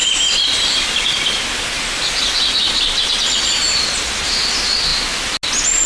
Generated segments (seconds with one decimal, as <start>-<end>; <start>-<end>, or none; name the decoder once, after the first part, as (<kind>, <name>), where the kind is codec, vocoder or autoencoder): none